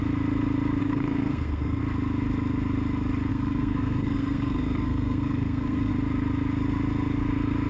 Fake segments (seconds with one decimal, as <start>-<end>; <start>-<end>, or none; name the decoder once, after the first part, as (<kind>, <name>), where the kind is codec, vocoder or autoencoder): 0.8-1.8 (codec, SNAC); 3.3-5.9